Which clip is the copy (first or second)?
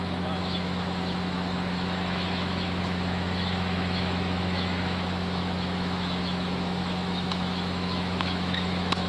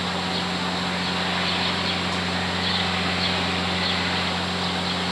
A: first